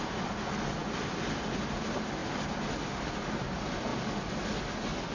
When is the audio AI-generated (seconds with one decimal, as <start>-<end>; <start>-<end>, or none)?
none